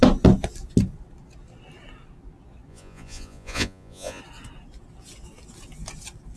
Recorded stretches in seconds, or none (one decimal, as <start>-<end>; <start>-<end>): 0.0-2.7; 4.2-6.4